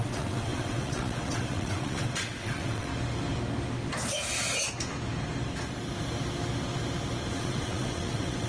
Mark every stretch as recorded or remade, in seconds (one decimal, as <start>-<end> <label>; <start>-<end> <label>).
0.0-2.9 remade; 2.9-7.3 recorded; 7.3-8.5 remade